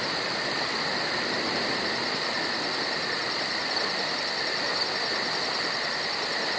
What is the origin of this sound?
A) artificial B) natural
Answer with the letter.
B